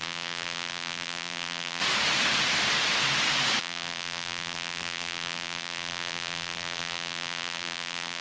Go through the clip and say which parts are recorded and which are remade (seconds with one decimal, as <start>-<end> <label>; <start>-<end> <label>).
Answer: 0.0-1.8 remade; 1.8-3.6 recorded; 3.6-8.2 remade